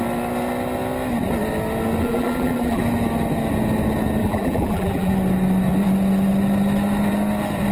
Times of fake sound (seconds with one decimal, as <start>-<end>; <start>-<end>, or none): 2.0-2.8; 4.2-5.1

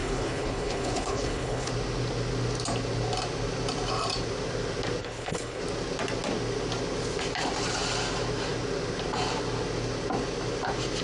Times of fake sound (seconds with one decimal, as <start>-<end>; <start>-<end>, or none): 0.0-1.7; 5.0-5.6

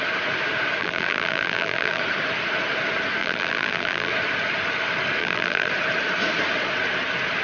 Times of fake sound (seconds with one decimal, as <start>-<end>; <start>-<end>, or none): 0.8-2.0; 3.2-4.1; 5.2-5.7

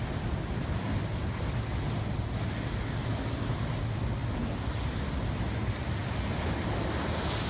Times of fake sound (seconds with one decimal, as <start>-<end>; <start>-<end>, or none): none

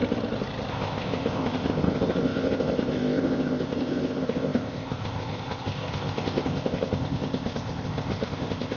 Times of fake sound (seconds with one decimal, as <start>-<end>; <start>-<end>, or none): 0.7-8.8